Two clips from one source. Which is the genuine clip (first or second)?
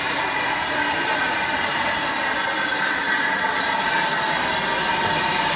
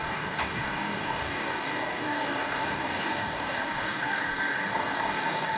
first